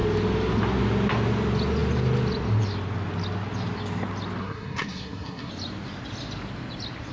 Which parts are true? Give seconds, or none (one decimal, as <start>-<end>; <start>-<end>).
0.0-4.4; 5.5-7.1